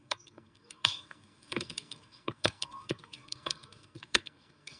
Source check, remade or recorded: remade